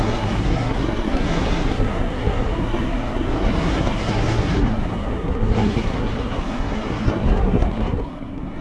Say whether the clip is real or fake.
fake